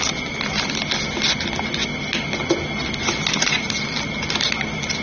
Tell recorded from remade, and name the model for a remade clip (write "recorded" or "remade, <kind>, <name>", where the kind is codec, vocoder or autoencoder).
recorded